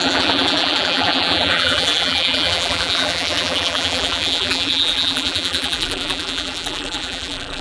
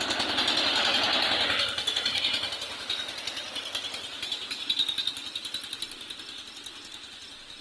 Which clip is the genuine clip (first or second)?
second